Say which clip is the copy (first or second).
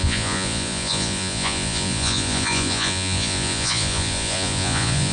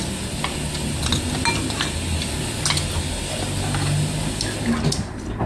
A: first